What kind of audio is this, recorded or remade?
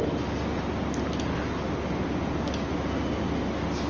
recorded